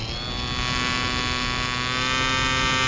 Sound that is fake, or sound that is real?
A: real